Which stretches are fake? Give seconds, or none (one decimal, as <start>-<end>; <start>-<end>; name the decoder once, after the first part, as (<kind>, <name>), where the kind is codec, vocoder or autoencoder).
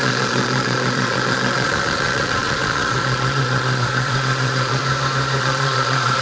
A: 0.0-4.8 (vocoder, Vocos); 5.4-6.2